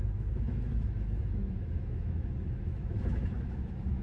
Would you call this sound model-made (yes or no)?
yes